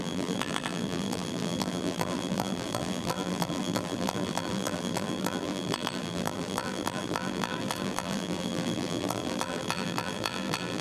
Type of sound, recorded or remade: remade